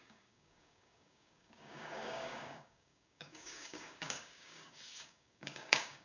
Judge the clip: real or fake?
fake